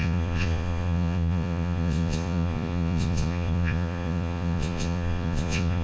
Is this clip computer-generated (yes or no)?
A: yes